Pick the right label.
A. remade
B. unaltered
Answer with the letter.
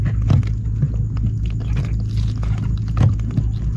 B